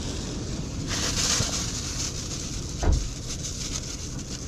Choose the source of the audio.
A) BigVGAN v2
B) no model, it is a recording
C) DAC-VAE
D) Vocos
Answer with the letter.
B